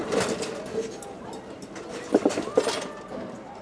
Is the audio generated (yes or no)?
no